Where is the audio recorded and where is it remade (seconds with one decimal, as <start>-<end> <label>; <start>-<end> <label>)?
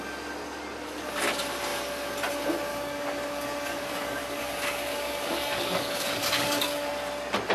0.0-2.7 recorded; 2.7-6.9 remade; 6.9-7.5 recorded